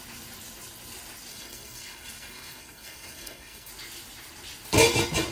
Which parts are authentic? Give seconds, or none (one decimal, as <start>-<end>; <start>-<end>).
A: 0.0-1.3; 3.7-5.3